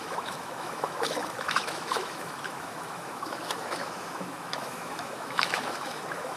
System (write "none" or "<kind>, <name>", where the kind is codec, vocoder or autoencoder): autoencoder, DAC-VAE